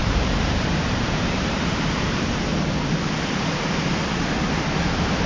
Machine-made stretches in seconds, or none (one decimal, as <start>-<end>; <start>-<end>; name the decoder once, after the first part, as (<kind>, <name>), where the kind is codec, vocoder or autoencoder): 0.0-2.5 (vocoder, BigVGAN v2)